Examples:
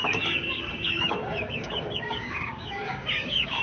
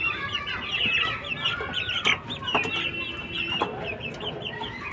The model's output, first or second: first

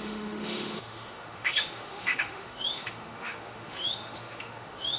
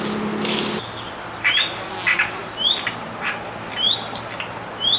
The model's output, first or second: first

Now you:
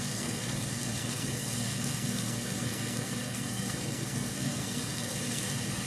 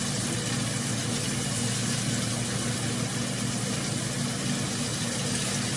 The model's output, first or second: first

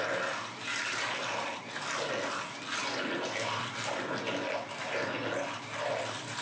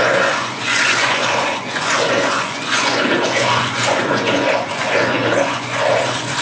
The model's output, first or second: second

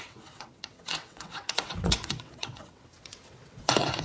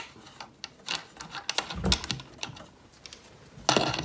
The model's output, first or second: first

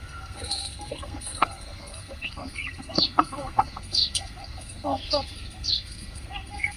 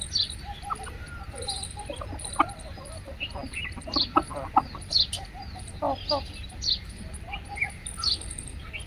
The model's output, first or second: first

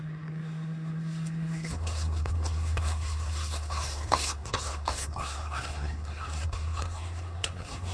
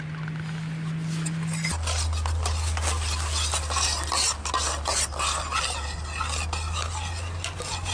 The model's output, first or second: first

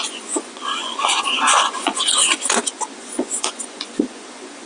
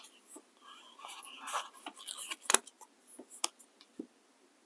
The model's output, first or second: first